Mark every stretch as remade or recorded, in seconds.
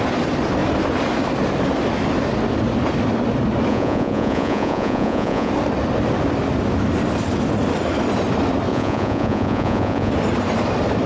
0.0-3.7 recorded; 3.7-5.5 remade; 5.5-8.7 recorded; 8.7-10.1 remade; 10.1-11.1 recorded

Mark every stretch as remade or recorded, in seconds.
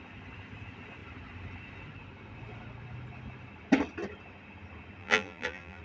0.0-5.0 recorded; 5.0-5.8 remade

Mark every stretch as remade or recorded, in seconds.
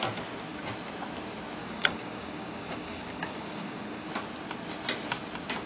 0.0-1.6 recorded; 1.6-4.1 remade; 4.1-5.7 recorded